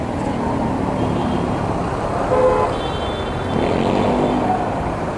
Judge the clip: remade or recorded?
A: recorded